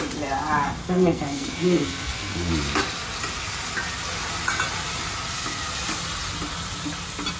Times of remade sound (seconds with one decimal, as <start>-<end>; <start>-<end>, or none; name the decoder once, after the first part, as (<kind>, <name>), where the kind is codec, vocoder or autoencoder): 0.8-2.5 (codec, SNAC)